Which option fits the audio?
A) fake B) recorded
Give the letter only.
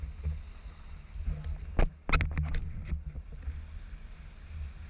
B